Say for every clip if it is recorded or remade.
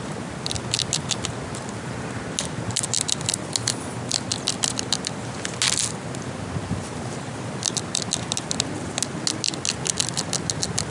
recorded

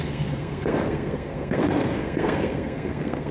remade